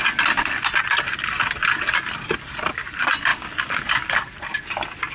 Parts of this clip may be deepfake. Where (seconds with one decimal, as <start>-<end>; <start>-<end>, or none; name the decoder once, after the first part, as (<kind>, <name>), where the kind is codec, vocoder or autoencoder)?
none